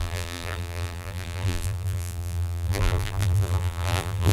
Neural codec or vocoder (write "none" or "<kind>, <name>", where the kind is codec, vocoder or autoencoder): vocoder, BigVGAN v2